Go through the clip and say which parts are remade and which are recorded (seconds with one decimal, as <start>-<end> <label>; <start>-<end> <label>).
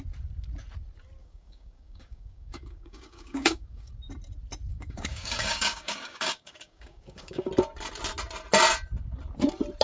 0.0-1.2 recorded; 1.2-3.9 remade; 3.9-4.7 recorded; 4.7-7.5 remade; 7.5-9.8 recorded